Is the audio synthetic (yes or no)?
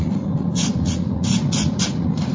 yes